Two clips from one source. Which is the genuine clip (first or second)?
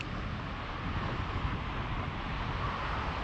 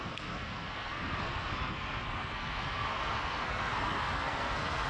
first